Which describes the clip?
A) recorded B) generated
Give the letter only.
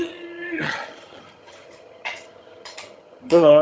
B